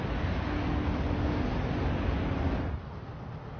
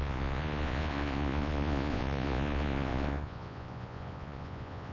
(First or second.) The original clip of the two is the first